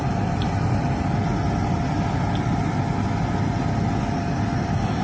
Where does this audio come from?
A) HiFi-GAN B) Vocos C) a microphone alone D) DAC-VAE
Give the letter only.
C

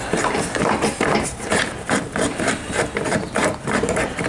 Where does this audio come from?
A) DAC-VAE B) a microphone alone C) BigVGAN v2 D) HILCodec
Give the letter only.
C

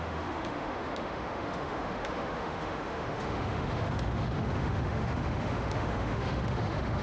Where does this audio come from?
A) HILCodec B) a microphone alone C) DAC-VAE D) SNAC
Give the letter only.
C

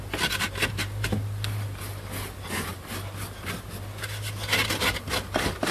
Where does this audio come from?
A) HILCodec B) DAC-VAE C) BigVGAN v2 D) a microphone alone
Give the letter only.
D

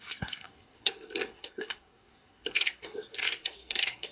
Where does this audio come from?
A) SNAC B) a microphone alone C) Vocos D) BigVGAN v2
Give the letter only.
A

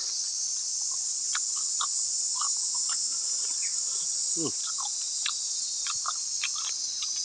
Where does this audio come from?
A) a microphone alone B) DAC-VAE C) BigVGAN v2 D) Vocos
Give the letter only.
A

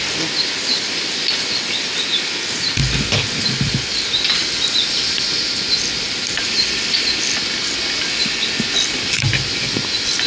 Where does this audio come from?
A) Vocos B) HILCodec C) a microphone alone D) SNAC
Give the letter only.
C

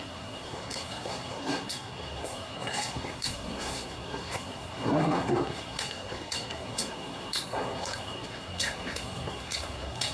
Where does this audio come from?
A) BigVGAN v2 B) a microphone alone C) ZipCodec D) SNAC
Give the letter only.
D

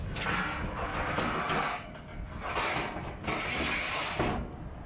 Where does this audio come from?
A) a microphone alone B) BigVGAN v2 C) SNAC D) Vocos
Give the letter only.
A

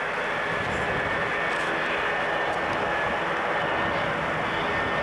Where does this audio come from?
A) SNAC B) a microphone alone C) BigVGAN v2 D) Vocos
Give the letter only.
B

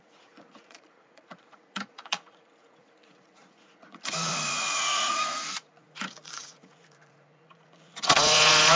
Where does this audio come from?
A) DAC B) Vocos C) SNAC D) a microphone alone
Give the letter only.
B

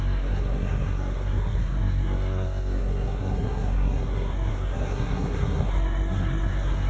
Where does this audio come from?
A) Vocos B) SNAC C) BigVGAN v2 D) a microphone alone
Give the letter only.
B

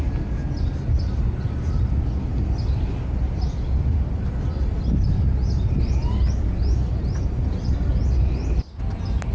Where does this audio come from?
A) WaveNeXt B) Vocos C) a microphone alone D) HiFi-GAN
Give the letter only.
C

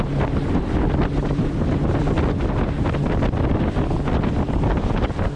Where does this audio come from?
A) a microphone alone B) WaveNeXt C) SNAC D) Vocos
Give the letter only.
A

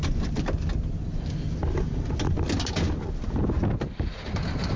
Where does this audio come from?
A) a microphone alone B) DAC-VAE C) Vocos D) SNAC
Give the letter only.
A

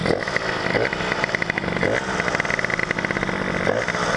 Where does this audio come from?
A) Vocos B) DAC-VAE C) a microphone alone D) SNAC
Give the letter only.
C